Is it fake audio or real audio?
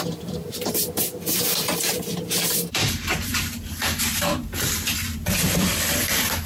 fake